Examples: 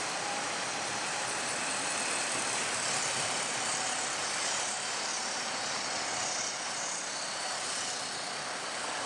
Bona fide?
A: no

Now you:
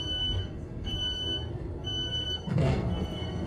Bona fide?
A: no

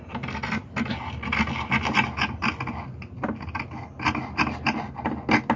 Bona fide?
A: yes